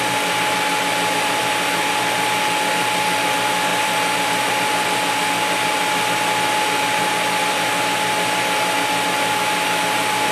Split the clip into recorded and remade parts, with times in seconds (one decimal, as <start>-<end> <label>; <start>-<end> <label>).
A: 0.0-3.7 recorded; 3.7-4.5 remade; 4.5-10.3 recorded